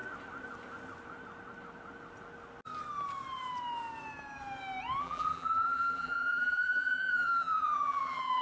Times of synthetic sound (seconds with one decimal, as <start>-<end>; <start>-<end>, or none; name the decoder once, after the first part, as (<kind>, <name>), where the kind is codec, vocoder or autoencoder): 5.0-8.4 (vocoder, BigVGAN v2)